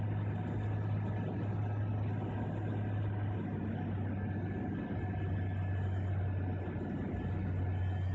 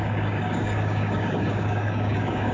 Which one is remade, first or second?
second